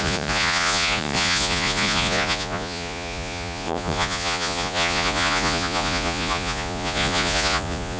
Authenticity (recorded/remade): remade